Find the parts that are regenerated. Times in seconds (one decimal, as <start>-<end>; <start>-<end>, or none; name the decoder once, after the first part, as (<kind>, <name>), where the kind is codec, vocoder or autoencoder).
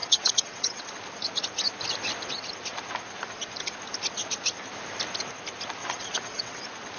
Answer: 0.0-0.9 (vocoder, WaveNeXt); 5.8-6.6